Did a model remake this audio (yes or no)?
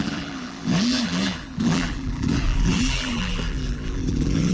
yes